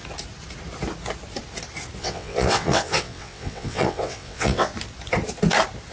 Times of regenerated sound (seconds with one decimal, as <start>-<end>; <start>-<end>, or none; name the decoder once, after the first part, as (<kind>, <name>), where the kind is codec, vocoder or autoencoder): 2.0-4.7 (vocoder, WaveNeXt)